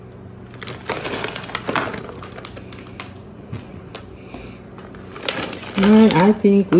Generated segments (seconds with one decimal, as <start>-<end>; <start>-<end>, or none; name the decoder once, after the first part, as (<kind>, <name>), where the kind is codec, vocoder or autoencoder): 3.2-3.8 (vocoder, Vocos)

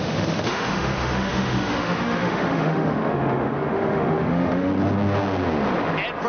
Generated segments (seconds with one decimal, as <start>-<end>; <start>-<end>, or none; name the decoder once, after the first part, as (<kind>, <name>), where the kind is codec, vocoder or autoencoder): 0.0-4.7 (autoencoder, DAC-VAE)

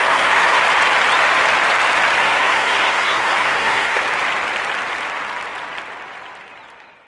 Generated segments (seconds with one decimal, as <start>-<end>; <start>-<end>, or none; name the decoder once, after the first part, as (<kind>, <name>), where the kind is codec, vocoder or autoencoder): 0.0-0.6 (codec, SNAC); 2.2-4.0

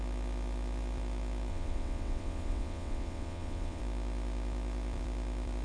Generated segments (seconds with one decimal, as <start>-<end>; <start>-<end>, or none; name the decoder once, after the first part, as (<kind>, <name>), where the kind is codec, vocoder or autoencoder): 1.5-3.8 (vocoder, WaveNeXt)

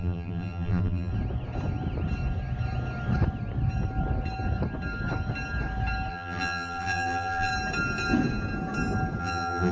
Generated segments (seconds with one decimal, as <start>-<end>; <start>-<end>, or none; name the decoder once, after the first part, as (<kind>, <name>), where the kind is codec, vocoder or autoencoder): 0.0-1.1 (vocoder, BigVGAN v2); 6.1-7.5; 9.2-9.7